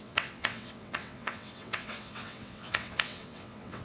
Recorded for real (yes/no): no